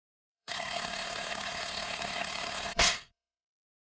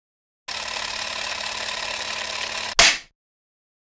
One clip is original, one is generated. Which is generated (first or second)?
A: first